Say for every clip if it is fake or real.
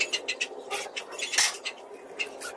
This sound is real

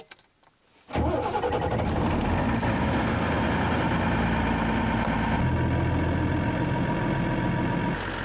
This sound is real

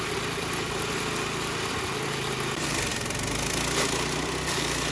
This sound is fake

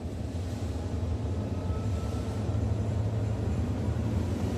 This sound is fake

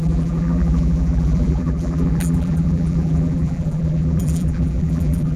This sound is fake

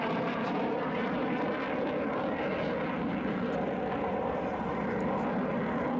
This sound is real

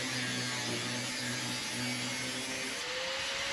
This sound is real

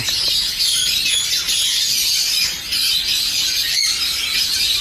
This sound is real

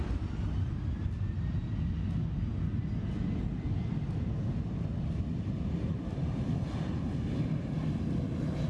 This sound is real